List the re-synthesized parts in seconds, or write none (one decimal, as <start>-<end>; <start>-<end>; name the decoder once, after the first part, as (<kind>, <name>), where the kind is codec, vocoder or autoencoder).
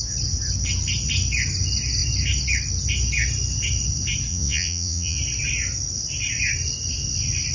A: 4.3-5.2 (vocoder, Vocos)